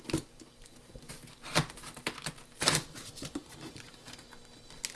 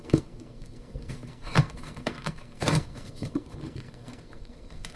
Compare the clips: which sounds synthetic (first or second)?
second